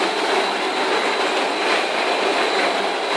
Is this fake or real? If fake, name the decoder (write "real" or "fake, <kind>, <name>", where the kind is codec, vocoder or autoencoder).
real